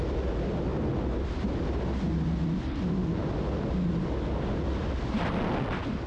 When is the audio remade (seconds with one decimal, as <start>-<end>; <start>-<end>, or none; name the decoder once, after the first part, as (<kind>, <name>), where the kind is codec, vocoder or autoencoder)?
none